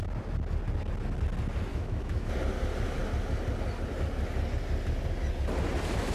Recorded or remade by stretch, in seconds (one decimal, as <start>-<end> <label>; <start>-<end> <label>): 0.0-1.7 recorded; 1.7-2.3 remade; 2.3-6.1 recorded